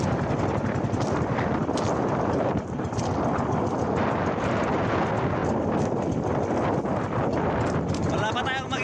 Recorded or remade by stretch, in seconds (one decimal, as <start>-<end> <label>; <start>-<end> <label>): 0.0-8.8 recorded